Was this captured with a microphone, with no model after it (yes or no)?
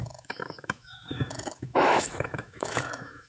no